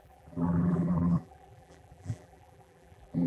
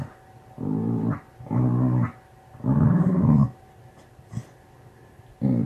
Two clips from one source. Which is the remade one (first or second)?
first